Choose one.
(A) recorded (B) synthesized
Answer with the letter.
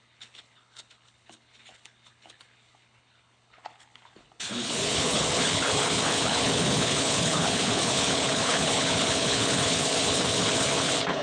B